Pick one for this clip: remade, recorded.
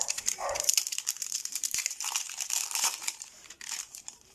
remade